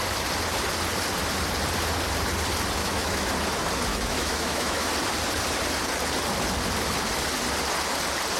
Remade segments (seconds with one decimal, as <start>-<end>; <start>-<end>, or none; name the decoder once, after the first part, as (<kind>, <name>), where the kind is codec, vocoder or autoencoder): 2.8-3.3 (autoencoder, DAC-VAE); 3.9-4.9